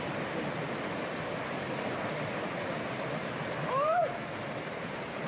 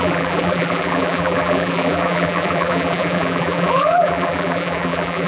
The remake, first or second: second